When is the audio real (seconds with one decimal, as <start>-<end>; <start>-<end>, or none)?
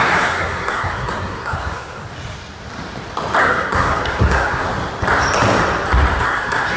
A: 2.0-3.4; 4.7-6.2